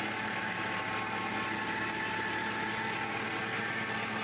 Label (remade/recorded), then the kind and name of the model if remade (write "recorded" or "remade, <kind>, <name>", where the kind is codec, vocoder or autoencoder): recorded